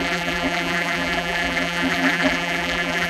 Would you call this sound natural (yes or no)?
no